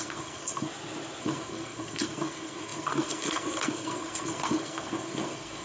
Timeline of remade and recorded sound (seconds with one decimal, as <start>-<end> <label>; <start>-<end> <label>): 0.0-0.7 remade; 0.7-1.2 recorded; 1.2-5.6 remade